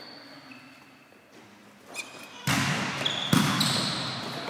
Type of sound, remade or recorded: recorded